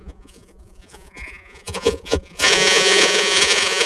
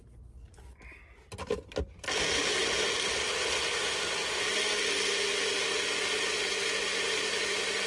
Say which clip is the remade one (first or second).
first